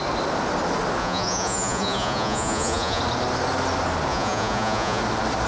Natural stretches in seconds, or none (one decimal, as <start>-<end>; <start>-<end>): 0.0-1.0; 3.0-4.1; 5.0-5.5